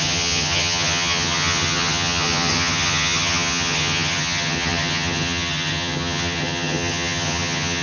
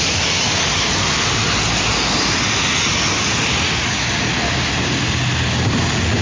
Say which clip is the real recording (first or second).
second